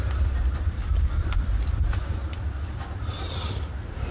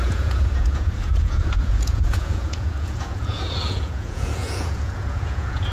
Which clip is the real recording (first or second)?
first